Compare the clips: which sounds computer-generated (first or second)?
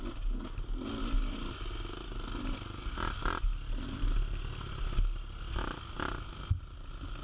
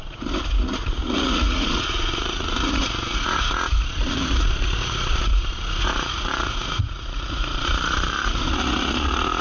second